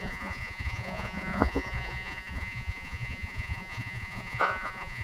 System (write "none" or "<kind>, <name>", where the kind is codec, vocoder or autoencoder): vocoder, Vocos